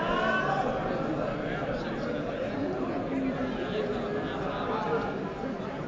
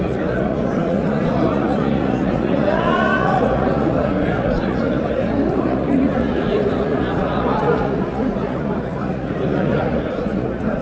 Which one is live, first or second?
first